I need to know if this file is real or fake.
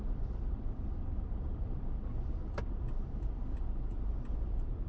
fake